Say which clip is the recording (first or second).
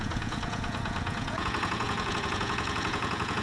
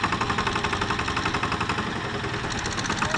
second